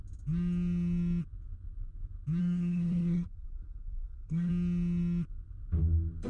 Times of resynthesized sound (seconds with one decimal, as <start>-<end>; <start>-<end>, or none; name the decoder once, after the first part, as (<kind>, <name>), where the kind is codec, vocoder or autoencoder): 2.4-4.5 (codec, SNAC)